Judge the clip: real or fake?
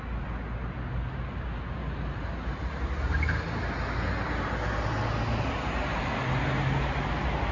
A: real